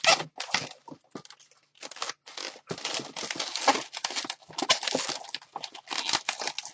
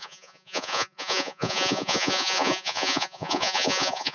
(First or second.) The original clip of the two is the first